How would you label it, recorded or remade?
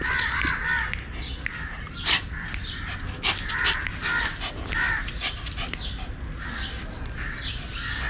recorded